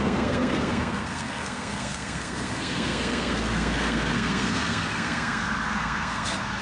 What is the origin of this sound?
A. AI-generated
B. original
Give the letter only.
A